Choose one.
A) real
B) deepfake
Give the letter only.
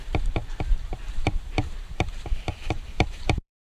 B